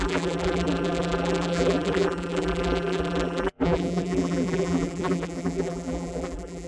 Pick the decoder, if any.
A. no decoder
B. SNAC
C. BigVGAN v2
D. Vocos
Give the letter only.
C